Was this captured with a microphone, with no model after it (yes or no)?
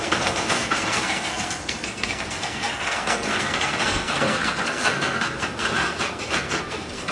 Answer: no